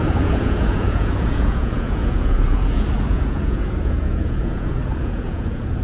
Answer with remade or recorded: remade